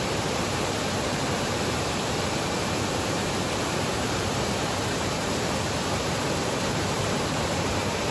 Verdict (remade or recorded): remade